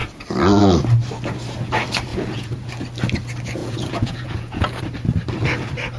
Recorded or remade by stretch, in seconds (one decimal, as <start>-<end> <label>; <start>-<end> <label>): 0.0-2.1 recorded; 2.1-2.7 remade; 2.7-3.6 recorded; 3.6-4.8 remade; 4.8-6.0 recorded